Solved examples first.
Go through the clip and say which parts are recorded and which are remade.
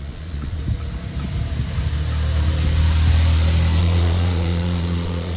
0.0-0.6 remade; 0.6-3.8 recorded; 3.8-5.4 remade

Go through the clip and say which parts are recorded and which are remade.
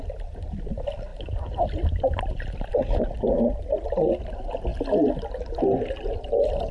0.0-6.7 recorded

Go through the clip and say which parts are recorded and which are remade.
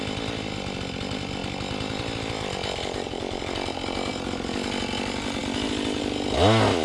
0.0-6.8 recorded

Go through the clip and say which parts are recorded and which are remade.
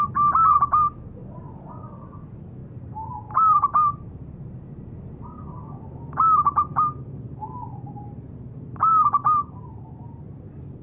0.0-10.8 recorded